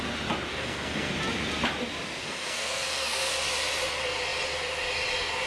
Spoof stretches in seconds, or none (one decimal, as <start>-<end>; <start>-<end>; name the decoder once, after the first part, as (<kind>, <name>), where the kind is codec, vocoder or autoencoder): 0.5-1.1 (codec, SNAC); 2.2-3.3